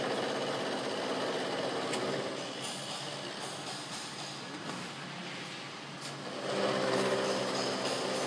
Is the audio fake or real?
real